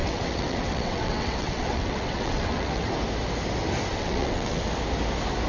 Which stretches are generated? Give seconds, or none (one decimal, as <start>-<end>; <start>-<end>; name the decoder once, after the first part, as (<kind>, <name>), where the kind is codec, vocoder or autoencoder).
0.0-2.9 (vocoder, WaveNeXt); 3.9-4.6